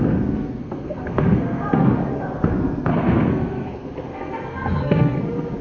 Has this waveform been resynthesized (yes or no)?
yes